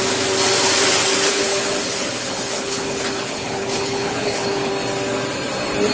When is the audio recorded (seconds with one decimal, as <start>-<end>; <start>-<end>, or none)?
0.0-1.3; 4.7-5.9